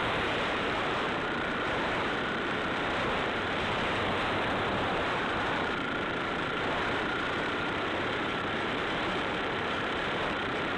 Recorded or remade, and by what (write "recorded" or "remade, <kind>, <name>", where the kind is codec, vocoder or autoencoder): remade, vocoder, BigVGAN v2